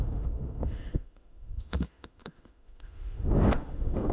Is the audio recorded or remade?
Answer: remade